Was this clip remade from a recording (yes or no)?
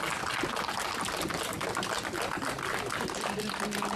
no